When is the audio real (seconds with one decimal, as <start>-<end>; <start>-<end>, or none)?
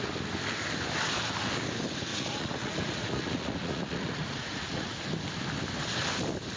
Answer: 0.0-2.1; 5.0-6.6